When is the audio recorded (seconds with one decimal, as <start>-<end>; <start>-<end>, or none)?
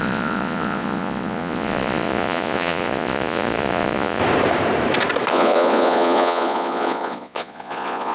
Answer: 4.2-5.3